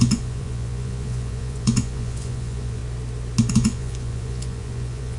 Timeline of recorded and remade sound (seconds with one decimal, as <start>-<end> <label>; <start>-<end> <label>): 0.0-2.8 remade; 2.8-3.5 recorded; 3.5-5.2 remade

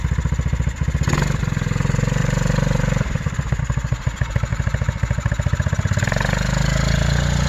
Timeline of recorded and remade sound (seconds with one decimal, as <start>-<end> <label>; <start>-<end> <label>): 0.0-2.2 recorded; 2.2-3.6 remade; 3.6-4.5 recorded; 4.5-5.3 remade; 5.3-7.5 recorded

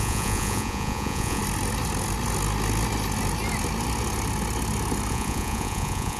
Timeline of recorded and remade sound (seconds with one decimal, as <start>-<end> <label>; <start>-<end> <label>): 0.0-1.4 remade; 1.4-5.1 recorded; 5.1-6.2 remade